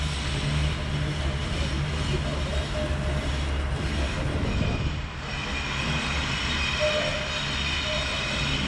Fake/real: real